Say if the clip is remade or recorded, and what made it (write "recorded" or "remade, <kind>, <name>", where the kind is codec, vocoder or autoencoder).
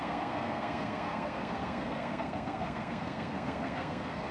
remade, codec, SNAC